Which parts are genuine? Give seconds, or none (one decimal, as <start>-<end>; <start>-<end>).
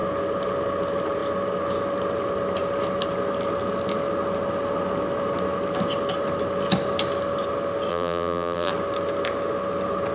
0.0-7.9; 8.7-10.1